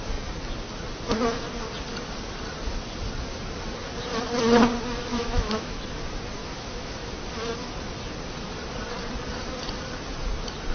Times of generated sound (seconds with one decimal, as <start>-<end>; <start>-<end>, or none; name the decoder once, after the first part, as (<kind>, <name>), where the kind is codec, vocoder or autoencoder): 5.0-5.8 (autoencoder, DAC-VAE); 6.4-7.1